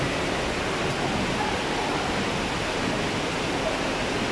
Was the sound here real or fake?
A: real